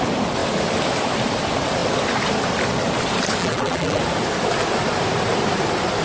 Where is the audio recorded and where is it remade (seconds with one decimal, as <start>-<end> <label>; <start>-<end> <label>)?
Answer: 0.0-3.4 recorded; 3.4-4.0 remade; 4.0-6.0 recorded